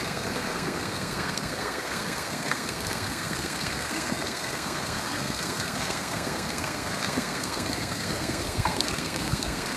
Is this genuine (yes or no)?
no